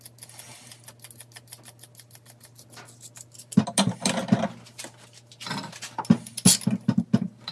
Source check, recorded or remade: recorded